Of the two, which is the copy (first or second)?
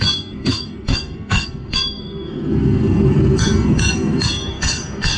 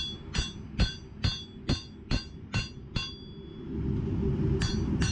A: first